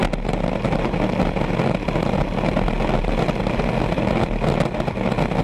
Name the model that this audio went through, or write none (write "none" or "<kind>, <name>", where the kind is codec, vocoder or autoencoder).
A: none